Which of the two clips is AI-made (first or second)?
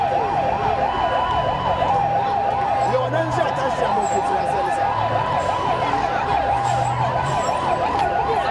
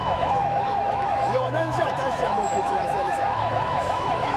second